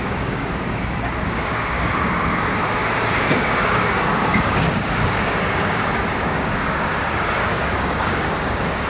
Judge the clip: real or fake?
fake